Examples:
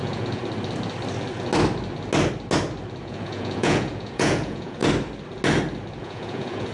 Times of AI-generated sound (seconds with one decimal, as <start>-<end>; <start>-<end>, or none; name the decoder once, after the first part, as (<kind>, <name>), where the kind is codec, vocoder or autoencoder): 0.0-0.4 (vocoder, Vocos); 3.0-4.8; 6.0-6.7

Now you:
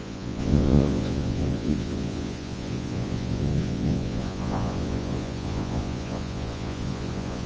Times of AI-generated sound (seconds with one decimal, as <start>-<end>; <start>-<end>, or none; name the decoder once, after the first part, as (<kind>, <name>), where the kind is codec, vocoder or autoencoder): 0.0-7.5 (vocoder, Vocos)

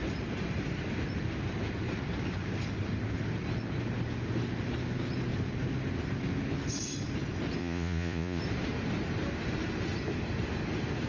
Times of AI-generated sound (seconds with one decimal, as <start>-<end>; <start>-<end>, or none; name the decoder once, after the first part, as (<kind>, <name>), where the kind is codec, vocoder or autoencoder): 7.6-8.4 (vocoder, Vocos)

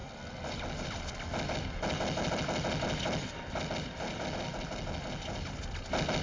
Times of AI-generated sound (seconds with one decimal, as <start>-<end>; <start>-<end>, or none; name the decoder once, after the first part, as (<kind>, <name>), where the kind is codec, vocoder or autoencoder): none

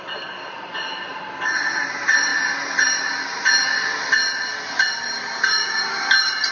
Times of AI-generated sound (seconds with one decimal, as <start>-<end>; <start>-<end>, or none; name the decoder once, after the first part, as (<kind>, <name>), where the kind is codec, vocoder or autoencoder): none